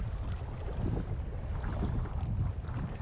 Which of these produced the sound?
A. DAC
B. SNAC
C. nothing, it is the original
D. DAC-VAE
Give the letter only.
C